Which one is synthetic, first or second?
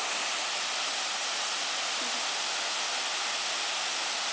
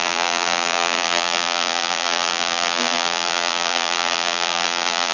second